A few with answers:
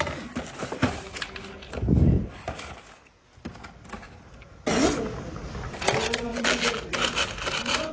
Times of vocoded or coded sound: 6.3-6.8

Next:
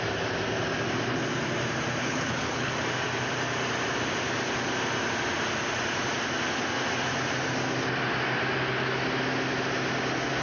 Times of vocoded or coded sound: 2.0-2.7

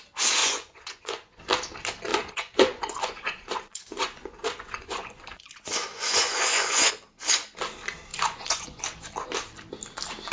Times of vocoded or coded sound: 0.4-1.4; 2.1-6.9; 8.1-8.8

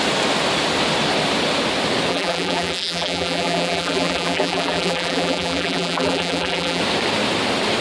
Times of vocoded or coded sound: 2.1-6.8

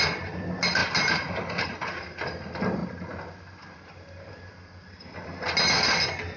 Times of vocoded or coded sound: none

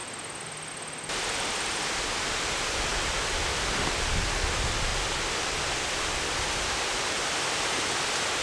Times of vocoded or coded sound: none

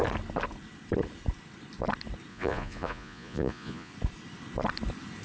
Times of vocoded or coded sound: 2.3-3.9